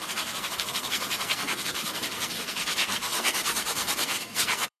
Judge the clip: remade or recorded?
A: remade